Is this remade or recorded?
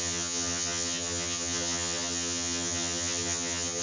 remade